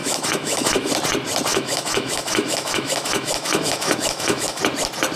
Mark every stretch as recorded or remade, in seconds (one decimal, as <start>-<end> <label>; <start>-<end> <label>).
0.0-0.9 remade; 0.9-1.5 recorded; 1.5-4.6 remade; 4.6-5.2 recorded